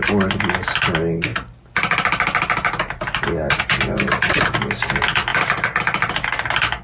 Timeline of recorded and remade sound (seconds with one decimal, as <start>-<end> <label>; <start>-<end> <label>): 0.0-6.8 recorded